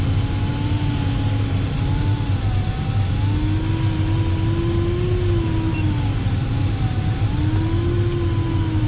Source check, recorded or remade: recorded